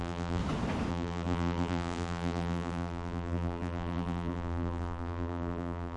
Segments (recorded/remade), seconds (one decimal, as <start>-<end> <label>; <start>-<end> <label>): 0.0-0.4 remade; 0.4-0.9 recorded; 0.9-6.0 remade